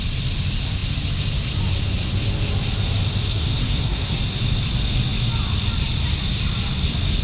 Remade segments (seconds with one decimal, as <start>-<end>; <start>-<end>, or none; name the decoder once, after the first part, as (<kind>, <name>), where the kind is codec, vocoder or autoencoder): 3.3-4.2 (codec, SNAC)

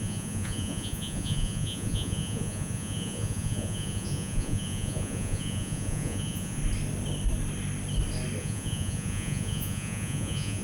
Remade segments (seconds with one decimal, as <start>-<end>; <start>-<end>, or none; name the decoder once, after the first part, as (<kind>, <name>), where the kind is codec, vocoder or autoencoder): 0.0-6.6 (vocoder, Vocos); 8.4-10.6

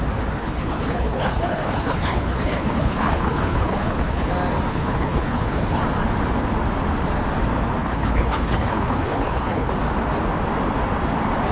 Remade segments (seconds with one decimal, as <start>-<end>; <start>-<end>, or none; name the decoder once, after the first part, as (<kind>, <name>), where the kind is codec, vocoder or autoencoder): 0.4-4.3 (codec, HILCodec); 4.7-5.8; 7.8-9.7